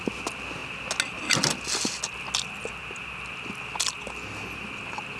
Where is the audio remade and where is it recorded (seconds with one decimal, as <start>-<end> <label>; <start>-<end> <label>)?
0.0-5.2 recorded